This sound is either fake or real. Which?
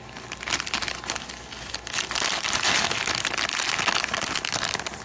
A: real